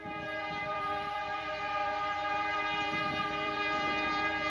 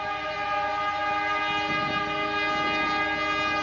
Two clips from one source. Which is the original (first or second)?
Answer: second